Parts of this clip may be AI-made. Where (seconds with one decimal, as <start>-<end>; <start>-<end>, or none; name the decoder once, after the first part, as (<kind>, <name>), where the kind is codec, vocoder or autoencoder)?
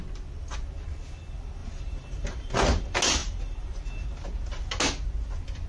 1.6-2.5 (vocoder, BigVGAN v2); 3.2-3.7